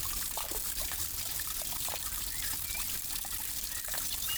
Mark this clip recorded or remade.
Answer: remade